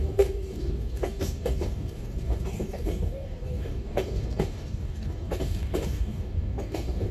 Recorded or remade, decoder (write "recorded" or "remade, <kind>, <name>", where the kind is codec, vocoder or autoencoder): remade, codec, DAC